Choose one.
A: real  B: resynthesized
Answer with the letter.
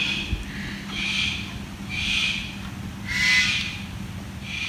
A